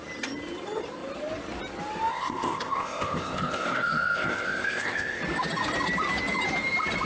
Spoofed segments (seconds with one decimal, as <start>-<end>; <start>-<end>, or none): 2.1-5.2